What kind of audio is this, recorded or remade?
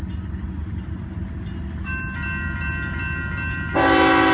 recorded